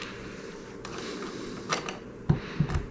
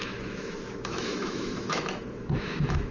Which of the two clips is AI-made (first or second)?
second